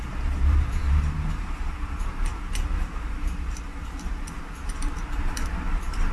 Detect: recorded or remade remade